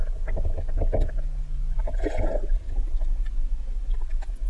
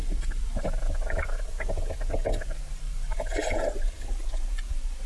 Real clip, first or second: first